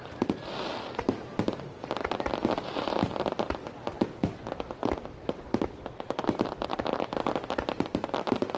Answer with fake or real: fake